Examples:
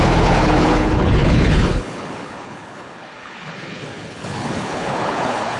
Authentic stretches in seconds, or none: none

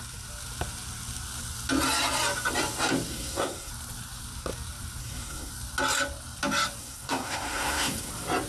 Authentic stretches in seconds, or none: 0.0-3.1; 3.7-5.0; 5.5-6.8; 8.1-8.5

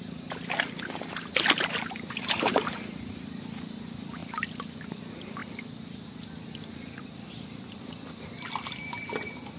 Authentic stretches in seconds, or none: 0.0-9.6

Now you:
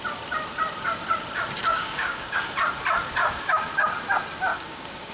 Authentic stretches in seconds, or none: 0.0-1.7; 2.5-3.2; 3.7-4.5

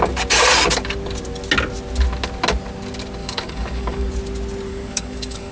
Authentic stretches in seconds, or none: 0.0-3.2; 4.1-4.7

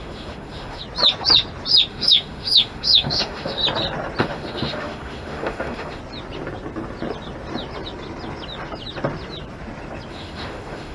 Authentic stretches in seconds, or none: 0.8-1.9; 3.6-4.2; 6.0-10.1

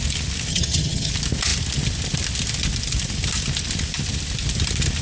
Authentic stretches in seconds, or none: 0.0-0.5; 1.1-5.0